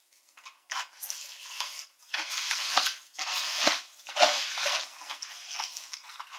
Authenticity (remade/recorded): remade